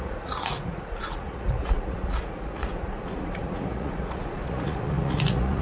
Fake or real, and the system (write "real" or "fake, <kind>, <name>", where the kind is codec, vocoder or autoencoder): fake, vocoder, Vocos